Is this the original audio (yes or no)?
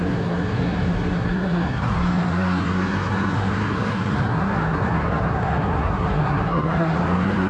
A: no